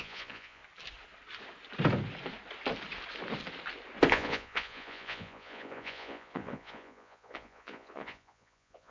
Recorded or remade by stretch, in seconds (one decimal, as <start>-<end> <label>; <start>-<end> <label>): 0.0-0.6 remade; 0.6-4.1 recorded; 4.1-8.9 remade